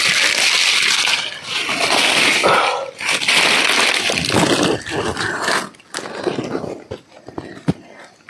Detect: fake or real real